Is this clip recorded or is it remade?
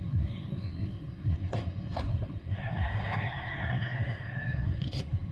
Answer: remade